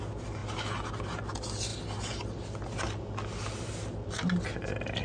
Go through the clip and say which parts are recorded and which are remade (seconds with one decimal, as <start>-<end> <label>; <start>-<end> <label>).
0.0-5.0 recorded